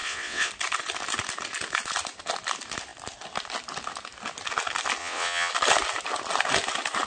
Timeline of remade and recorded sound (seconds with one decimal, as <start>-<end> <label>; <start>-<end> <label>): 0.0-0.5 remade; 0.5-5.0 recorded; 5.0-5.5 remade; 5.5-7.1 recorded